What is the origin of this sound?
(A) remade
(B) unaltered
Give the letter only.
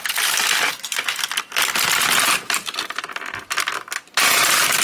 B